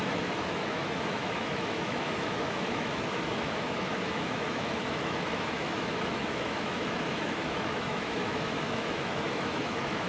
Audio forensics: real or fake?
fake